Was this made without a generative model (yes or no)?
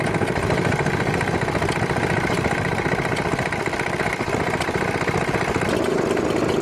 yes